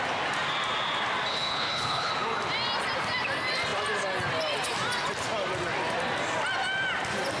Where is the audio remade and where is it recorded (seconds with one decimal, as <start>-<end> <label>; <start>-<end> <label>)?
0.0-1.3 recorded; 1.3-2.1 remade; 2.1-7.4 recorded